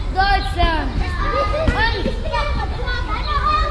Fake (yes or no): no